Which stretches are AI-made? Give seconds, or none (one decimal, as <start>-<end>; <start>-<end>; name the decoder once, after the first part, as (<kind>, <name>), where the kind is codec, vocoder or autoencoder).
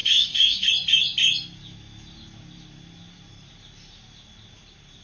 0.0-0.7 (autoencoder, DAC-VAE)